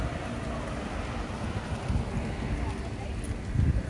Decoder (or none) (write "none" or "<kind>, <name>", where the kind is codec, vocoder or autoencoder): none